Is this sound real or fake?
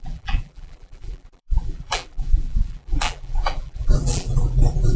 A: fake